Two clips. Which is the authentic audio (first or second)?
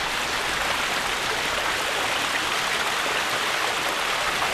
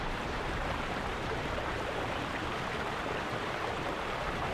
first